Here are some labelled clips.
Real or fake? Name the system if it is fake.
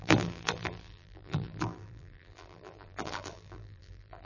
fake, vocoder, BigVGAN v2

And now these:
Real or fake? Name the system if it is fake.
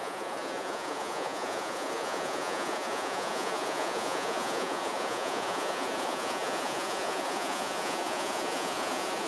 fake, vocoder, Vocos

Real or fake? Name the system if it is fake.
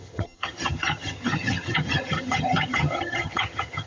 fake, vocoder, HiFi-GAN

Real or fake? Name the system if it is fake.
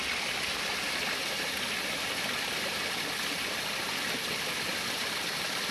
real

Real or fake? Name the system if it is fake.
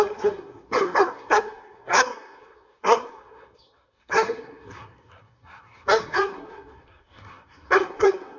fake, codec, SNAC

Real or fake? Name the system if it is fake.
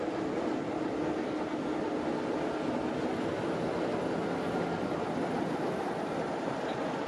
real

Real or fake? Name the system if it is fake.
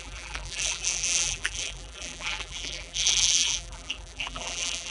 fake, vocoder, BigVGAN v2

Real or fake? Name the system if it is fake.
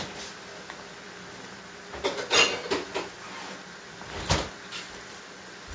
real